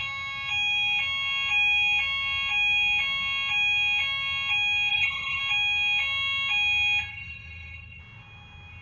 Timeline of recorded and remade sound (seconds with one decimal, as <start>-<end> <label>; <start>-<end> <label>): 0.0-4.9 recorded; 4.9-5.4 remade; 5.4-7.1 recorded; 7.1-8.0 remade; 8.0-8.8 recorded